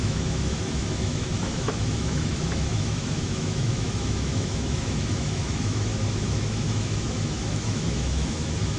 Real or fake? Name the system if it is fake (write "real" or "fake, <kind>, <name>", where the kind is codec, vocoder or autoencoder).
fake, autoencoder, DAC-VAE